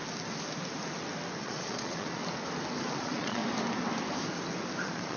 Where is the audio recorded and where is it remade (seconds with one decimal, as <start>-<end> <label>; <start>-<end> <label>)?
0.0-1.4 recorded; 1.4-2.2 remade; 2.2-2.9 recorded; 2.9-3.4 remade; 3.4-4.8 recorded; 4.8-5.2 remade

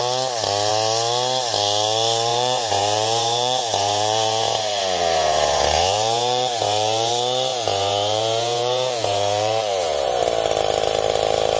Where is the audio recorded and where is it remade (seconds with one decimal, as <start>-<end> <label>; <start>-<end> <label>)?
0.0-2.3 recorded; 2.3-7.1 remade; 7.1-7.5 recorded; 7.5-10.2 remade; 10.2-11.6 recorded

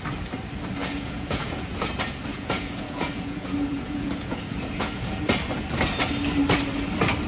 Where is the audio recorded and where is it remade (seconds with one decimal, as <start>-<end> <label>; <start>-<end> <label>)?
0.0-0.8 recorded; 0.8-1.9 remade; 1.9-2.3 recorded; 2.3-5.2 remade; 5.2-7.3 recorded

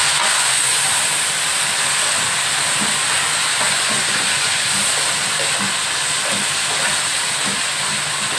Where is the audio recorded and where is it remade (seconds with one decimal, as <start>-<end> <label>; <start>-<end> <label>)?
0.0-0.8 remade; 0.8-3.5 recorded; 3.5-4.7 remade; 4.7-8.4 recorded

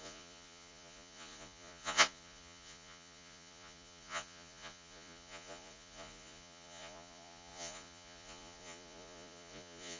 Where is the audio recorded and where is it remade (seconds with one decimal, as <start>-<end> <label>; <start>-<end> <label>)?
0.0-10.0 remade

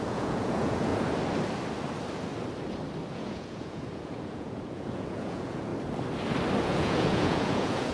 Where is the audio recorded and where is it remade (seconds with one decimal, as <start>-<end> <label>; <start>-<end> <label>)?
0.0-0.9 remade; 0.9-3.1 recorded; 3.1-5.7 remade; 5.7-6.6 recorded; 6.6-7.9 remade

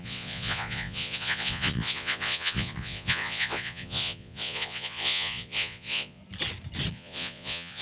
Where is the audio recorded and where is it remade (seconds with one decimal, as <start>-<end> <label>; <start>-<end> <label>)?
0.0-6.2 remade; 6.2-6.9 recorded; 6.9-7.8 remade

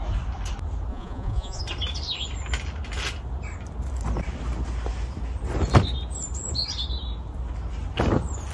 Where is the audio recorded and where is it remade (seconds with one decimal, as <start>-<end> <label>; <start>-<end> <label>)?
0.0-0.9 recorded; 0.9-1.6 remade; 1.6-8.5 recorded